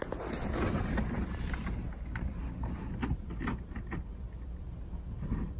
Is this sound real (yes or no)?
yes